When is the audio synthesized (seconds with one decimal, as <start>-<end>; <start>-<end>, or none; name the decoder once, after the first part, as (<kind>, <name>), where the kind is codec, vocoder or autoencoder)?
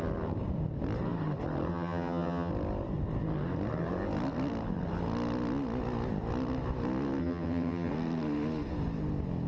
1.7-2.5 (vocoder, HiFi-GAN); 7.2-7.9